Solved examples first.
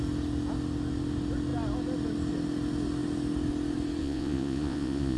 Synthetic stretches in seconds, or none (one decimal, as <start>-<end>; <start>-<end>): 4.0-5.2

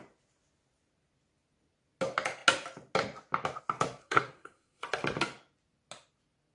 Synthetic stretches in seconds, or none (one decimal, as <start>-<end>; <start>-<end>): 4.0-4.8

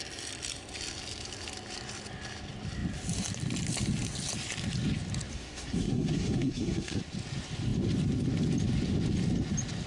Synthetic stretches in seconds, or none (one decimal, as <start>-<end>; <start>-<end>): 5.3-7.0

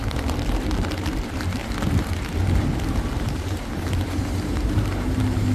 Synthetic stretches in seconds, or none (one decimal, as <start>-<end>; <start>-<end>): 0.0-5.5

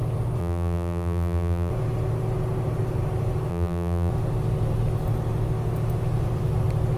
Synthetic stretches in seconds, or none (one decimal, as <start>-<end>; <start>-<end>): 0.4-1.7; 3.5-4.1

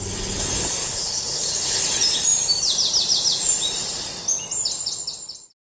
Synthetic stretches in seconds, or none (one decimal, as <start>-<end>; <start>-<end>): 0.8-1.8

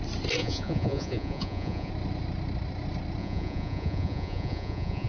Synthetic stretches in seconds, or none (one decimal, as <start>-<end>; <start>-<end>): 0.4-1.9; 3.2-5.1